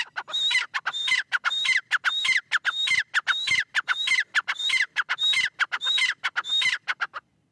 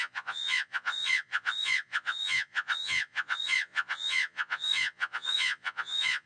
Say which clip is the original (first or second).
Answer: first